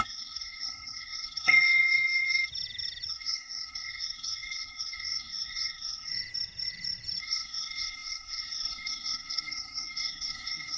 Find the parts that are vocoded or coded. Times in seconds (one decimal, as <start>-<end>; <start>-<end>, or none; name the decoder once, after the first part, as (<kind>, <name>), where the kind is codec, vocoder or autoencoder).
0.0-2.5 (codec, SNAC); 3.1-6.1; 7.2-10.8